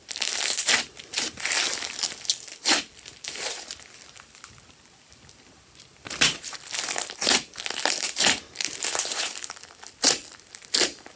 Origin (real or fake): fake